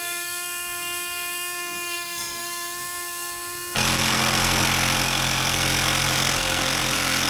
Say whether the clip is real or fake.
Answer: fake